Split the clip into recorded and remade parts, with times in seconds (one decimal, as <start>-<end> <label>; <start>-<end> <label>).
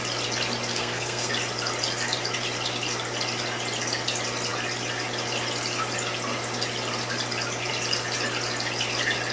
0.0-0.7 recorded; 0.7-1.3 remade; 1.3-9.3 recorded